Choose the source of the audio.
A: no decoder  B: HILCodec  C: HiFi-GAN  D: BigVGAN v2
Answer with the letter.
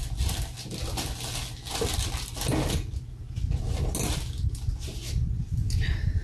A